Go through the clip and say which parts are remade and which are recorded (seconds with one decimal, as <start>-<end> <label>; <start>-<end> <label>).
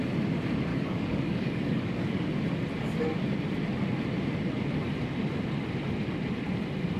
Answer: 0.0-0.7 recorded; 0.7-2.3 remade; 2.3-7.0 recorded